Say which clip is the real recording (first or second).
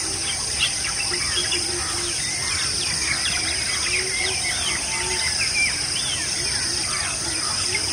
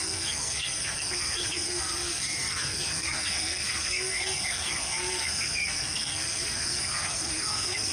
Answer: first